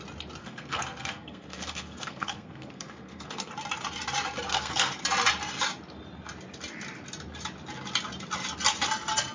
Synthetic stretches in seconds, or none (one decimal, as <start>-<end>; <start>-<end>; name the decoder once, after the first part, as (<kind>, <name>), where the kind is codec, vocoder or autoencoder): 0.4-3.5 (codec, SNAC); 4.5-5.0